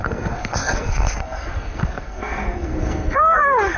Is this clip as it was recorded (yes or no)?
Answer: no